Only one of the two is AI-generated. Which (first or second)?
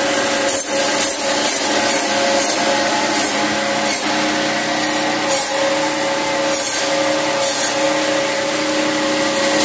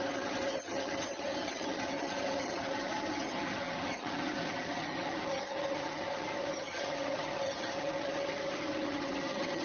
second